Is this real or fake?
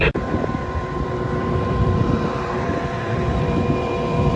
fake